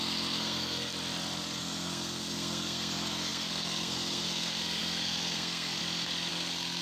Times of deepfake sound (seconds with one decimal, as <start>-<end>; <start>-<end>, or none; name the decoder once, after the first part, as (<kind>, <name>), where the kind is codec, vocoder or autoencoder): 0.0-0.9 (codec, SNAC); 1.6-5.8; 6.3-6.8